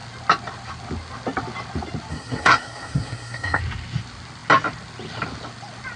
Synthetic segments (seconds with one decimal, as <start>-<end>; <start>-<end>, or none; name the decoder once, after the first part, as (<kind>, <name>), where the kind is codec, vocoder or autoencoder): 2.1-3.6 (codec, SNAC)